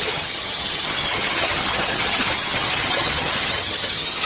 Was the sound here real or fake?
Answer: fake